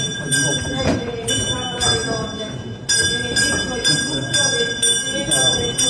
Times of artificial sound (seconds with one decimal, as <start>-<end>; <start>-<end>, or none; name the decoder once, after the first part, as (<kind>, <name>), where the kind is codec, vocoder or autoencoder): 0.0-2.0 (vocoder, BigVGAN v2); 5.5-5.9